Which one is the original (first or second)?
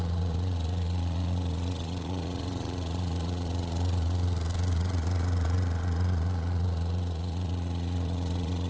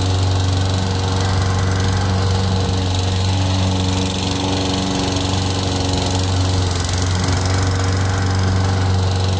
second